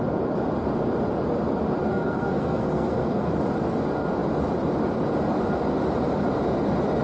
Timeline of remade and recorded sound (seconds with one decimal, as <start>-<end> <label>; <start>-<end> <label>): 0.0-1.9 recorded; 1.9-3.3 remade; 3.3-7.0 recorded